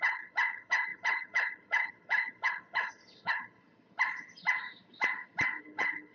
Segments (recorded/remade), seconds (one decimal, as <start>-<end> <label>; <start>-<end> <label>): 0.0-3.6 remade; 3.6-5.6 recorded; 5.6-6.1 remade